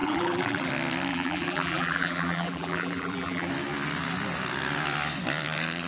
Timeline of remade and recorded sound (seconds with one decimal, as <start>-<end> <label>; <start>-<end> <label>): 0.0-0.7 remade; 0.7-1.1 recorded; 1.1-3.5 remade; 3.5-5.9 recorded